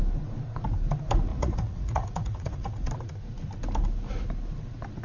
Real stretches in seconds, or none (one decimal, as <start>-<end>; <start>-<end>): 0.0-1.3; 2.9-5.0